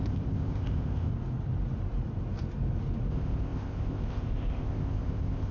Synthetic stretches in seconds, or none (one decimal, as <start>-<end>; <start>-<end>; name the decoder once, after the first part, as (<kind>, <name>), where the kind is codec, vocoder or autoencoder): 0.0-1.1 (codec, ZipCodec); 3.1-5.5